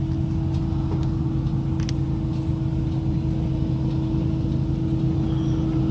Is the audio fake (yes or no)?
no